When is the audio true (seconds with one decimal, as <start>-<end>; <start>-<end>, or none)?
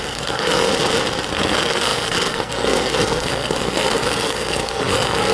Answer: 0.7-1.3